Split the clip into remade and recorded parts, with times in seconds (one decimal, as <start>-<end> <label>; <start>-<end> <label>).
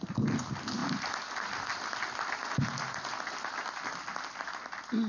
0.0-5.1 recorded